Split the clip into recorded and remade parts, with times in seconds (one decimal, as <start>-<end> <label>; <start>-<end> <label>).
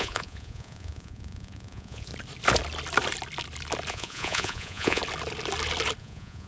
0.0-2.1 remade; 2.1-3.9 recorded; 3.9-5.0 remade; 5.0-6.0 recorded; 6.0-6.5 remade